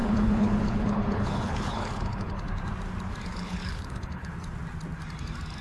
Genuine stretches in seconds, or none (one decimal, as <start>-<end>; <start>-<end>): 2.6-3.3; 4.3-5.6

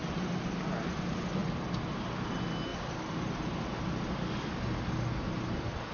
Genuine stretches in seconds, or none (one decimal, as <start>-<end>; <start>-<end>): 0.5-2.7; 3.6-5.9